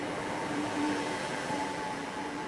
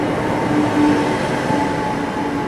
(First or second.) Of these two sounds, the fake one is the first